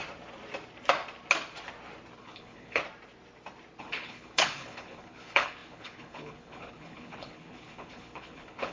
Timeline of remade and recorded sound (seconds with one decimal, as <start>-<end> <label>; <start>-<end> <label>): 0.0-2.2 recorded; 2.2-2.8 remade; 2.8-3.8 recorded; 3.8-8.7 remade